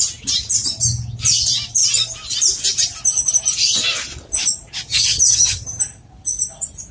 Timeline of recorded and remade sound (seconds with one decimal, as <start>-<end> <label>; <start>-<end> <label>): 0.0-4.9 recorded; 4.9-5.8 remade; 5.8-6.9 recorded